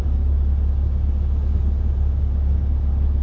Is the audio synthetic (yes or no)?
no